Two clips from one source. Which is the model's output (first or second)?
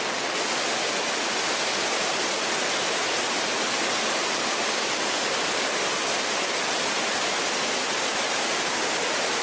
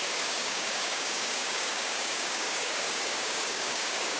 second